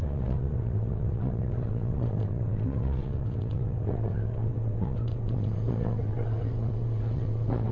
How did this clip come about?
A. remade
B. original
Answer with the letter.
A